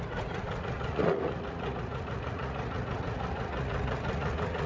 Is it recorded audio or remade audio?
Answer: remade